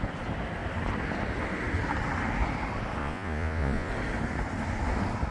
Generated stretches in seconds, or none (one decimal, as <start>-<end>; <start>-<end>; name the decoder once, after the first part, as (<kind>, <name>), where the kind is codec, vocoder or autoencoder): 3.0-3.9 (vocoder, Vocos)